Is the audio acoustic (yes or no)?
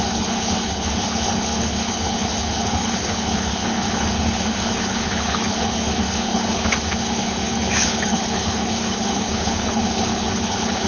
no